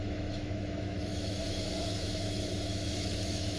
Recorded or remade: remade